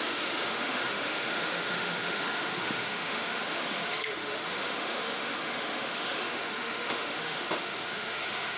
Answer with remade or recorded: remade